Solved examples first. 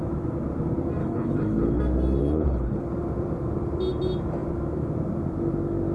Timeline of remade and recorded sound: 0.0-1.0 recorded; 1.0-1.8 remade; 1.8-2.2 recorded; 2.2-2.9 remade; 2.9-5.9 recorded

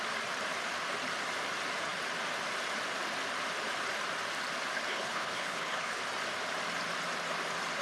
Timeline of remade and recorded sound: 0.0-4.9 recorded; 4.9-6.0 remade; 6.0-7.8 recorded